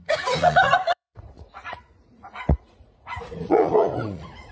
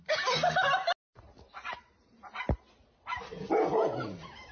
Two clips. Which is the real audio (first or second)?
second